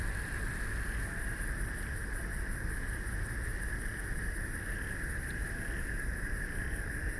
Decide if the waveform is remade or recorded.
recorded